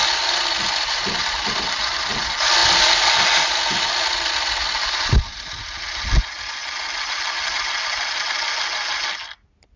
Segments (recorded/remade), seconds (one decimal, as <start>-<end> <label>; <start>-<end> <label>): 0.0-9.8 recorded